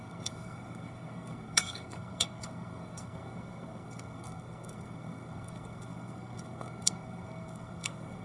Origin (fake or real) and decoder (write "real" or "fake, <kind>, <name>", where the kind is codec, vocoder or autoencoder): fake, codec, SNAC